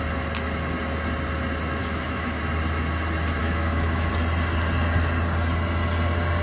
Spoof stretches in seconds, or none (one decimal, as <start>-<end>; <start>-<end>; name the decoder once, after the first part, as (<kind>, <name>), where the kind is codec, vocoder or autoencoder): 1.8-2.4 (autoencoder, DAC-VAE); 3.4-4.1